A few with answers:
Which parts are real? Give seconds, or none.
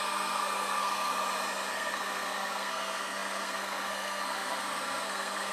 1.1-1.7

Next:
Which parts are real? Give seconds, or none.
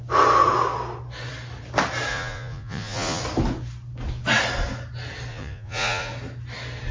0.0-2.1; 3.2-5.3; 6.1-6.9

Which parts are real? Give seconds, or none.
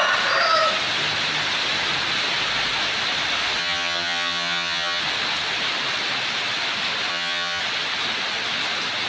0.0-3.6; 5.0-7.1; 7.6-9.1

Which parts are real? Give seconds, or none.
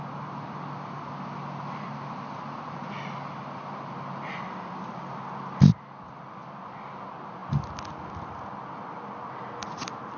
0.0-10.2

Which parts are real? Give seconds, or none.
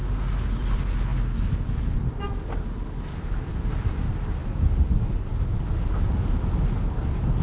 0.0-7.4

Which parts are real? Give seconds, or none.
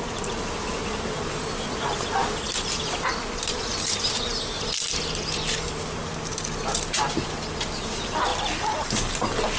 0.0-9.6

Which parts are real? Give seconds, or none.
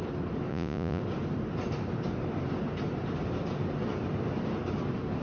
0.0-0.5; 1.0-5.2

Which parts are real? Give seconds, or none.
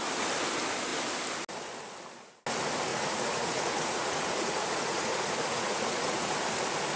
0.0-2.9; 6.3-7.0